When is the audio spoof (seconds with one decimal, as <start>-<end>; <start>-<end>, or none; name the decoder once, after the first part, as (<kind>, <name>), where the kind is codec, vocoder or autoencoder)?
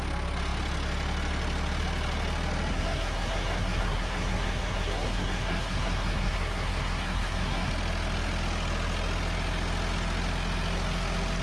2.7-7.7 (codec, SNAC)